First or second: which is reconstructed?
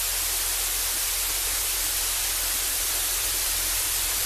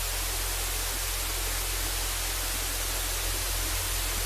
first